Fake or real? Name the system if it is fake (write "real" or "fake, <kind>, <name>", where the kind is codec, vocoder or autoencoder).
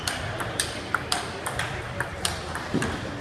fake, vocoder, BigVGAN v2